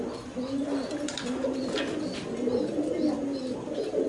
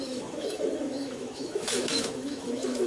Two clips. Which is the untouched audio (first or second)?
first